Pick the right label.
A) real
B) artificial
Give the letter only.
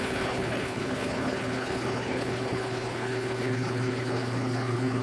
B